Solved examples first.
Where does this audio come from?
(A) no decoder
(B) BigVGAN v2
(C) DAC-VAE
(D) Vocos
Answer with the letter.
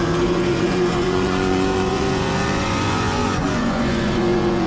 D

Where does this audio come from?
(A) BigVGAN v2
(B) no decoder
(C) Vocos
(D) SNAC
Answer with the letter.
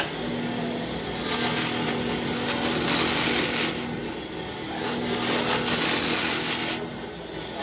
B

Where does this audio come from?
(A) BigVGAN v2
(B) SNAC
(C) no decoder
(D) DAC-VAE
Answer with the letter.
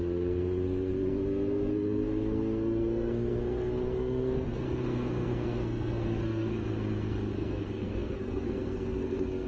B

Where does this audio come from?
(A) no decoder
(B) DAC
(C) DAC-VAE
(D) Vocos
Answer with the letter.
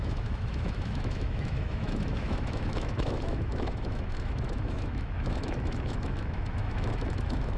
C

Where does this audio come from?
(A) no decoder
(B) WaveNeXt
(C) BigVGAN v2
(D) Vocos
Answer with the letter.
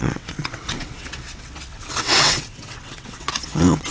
B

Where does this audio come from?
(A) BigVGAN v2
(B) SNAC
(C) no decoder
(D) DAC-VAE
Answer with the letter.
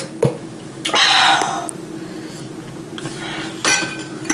C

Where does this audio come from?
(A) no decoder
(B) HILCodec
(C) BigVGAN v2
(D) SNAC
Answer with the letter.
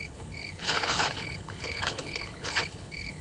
B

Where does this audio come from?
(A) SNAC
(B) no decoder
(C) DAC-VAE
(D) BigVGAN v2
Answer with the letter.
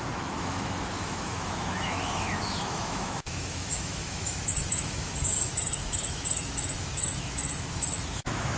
C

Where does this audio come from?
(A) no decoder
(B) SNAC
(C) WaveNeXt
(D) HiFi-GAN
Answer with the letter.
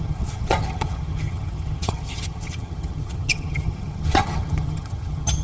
D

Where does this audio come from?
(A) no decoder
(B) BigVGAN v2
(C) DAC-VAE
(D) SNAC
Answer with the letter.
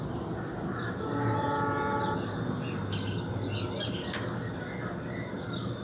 A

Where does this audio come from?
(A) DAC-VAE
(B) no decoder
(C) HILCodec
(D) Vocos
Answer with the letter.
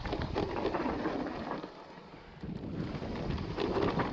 B